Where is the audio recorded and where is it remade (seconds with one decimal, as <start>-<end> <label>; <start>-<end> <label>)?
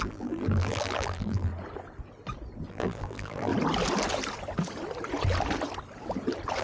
0.0-1.5 remade; 1.5-2.7 recorded; 2.7-3.5 remade; 3.5-6.6 recorded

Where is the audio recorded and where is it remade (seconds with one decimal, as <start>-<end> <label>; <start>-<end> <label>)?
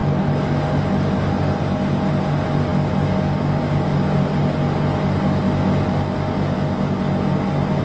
0.0-7.8 recorded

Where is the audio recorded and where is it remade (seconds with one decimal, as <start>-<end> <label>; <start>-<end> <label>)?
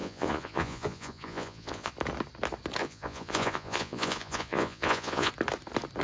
0.0-1.9 remade; 1.9-2.8 recorded; 2.8-5.3 remade; 5.3-6.0 recorded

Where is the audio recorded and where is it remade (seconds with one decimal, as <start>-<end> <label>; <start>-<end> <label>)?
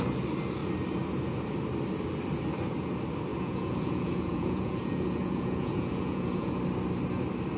0.0-3.3 recorded; 3.3-6.6 remade; 6.6-7.6 recorded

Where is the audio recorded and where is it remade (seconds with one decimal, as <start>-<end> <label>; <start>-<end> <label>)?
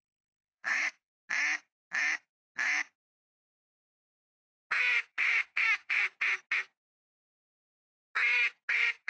0.0-1.1 remade; 1.1-4.8 recorded; 4.8-6.0 remade; 6.0-8.7 recorded; 8.7-9.1 remade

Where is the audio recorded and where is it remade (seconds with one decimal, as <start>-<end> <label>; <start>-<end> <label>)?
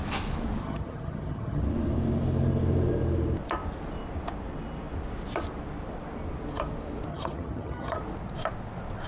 0.0-0.6 recorded; 0.6-1.6 remade; 1.6-7.1 recorded; 7.1-8.0 remade; 8.0-9.1 recorded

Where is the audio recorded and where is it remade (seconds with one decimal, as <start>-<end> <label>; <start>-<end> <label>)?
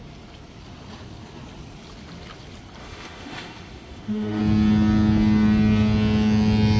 0.0-2.8 recorded; 2.8-4.4 remade; 4.4-6.8 recorded